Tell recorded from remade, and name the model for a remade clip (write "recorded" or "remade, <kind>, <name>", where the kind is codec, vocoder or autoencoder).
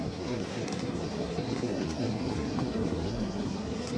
remade, codec, SNAC